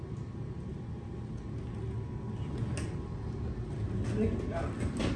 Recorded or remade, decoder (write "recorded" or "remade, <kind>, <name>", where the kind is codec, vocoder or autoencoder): recorded